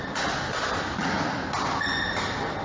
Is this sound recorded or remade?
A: recorded